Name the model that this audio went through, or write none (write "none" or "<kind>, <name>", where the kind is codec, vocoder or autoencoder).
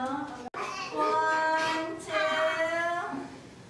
none